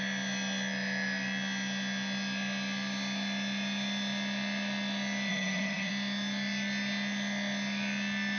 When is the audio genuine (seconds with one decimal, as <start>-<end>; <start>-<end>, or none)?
0.0-5.3; 5.9-8.4